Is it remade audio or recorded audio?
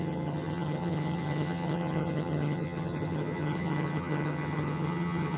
remade